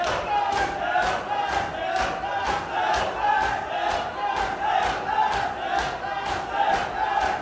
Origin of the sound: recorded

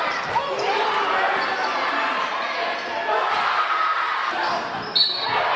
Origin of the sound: recorded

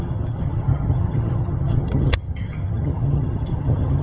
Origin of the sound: remade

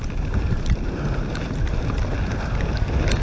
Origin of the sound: recorded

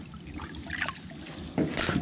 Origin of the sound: recorded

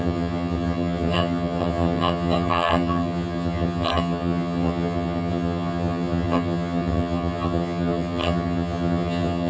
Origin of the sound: remade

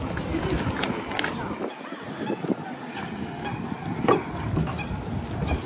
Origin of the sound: recorded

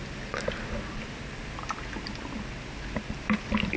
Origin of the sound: recorded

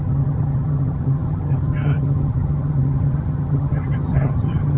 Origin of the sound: remade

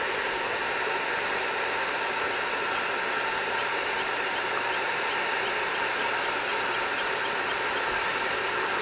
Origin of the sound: recorded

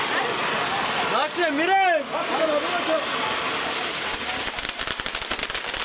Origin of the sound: recorded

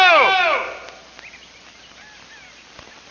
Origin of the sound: recorded